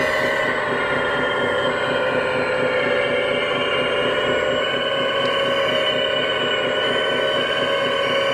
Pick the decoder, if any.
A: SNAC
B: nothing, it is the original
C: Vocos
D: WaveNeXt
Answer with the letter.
B